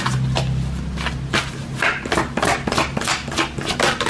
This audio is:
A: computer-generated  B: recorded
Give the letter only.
B